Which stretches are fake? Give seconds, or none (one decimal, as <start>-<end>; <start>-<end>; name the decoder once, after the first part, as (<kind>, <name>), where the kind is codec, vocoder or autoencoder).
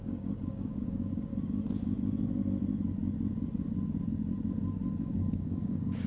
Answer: 0.0-1.3 (codec, DAC); 5.0-6.1